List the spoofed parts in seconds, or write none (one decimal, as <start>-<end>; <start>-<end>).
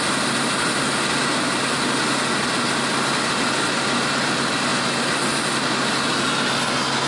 none